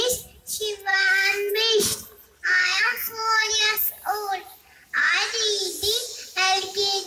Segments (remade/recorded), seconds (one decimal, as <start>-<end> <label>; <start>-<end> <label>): 0.0-0.9 recorded; 0.9-1.5 remade; 1.5-2.6 recorded; 2.6-3.5 remade; 3.5-7.1 recorded